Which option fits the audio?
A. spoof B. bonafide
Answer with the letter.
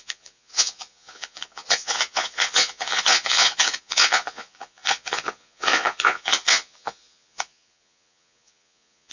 A